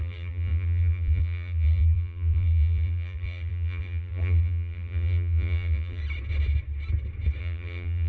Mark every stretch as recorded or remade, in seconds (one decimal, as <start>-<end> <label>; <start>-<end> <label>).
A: 0.0-6.0 remade; 6.0-7.4 recorded; 7.4-8.1 remade